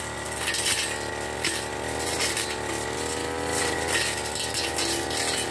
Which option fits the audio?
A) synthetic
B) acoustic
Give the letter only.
B